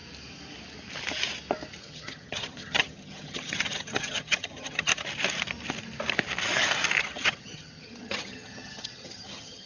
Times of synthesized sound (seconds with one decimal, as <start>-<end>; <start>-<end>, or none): 1.8-4.9; 7.0-9.7